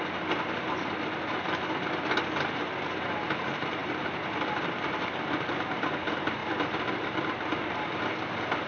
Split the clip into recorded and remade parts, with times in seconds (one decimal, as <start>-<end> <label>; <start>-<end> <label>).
0.0-3.8 recorded; 3.8-4.9 remade; 4.9-6.4 recorded; 6.4-8.7 remade